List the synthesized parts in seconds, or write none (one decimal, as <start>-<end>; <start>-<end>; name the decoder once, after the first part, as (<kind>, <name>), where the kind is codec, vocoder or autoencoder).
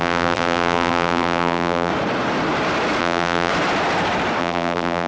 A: 0.0-1.9 (vocoder, BigVGAN v2); 3.0-3.5; 4.4-5.1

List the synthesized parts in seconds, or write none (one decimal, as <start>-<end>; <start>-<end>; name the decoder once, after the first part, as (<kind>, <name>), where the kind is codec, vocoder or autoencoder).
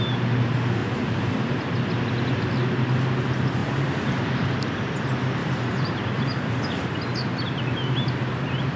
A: 0.8-1.5 (vocoder, BigVGAN v2); 3.6-4.1; 5.4-7.1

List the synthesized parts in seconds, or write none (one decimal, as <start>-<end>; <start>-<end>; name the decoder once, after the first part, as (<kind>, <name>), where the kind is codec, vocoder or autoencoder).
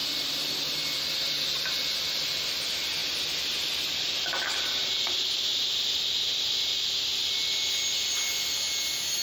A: 3.0-4.8 (vocoder, BigVGAN v2); 5.5-6.1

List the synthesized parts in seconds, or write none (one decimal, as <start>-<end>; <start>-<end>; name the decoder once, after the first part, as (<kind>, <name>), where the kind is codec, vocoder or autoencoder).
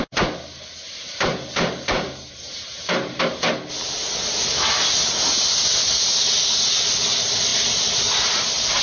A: 1.3-3.2 (vocoder, BigVGAN v2)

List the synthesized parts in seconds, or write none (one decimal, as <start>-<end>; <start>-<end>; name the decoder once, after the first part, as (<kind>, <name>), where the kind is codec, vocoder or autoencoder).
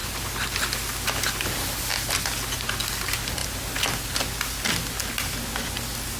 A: none